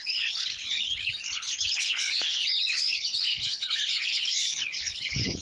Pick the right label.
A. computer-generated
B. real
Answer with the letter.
A